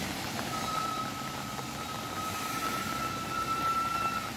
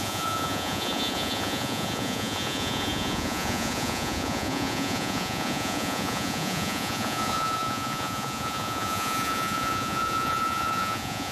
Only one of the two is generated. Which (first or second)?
second